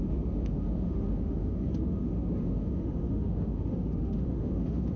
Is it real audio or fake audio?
fake